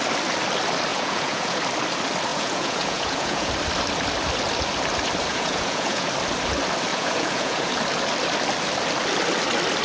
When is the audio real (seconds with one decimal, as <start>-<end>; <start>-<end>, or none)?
0.0-0.9; 1.6-2.3; 3.5-5.3; 6.1-6.9; 7.7-9.8